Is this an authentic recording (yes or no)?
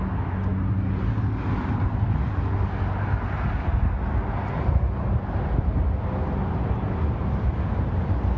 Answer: yes